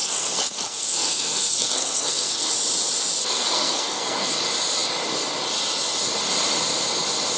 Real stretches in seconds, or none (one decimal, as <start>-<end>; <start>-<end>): 2.5-3.2; 4.3-7.4